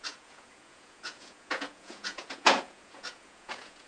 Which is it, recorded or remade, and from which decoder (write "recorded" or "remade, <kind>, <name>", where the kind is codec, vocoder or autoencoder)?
remade, vocoder, Vocos